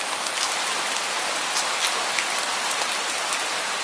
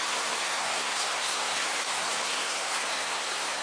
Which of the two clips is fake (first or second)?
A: second